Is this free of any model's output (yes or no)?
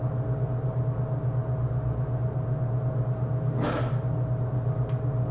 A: yes